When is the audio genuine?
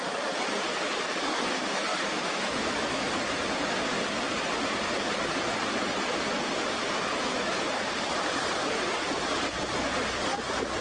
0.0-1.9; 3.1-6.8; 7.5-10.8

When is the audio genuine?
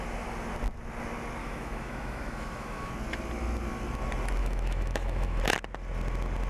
0.0-1.4; 2.9-4.4; 5.4-6.5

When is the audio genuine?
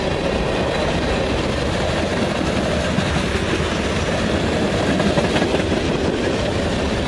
0.0-7.1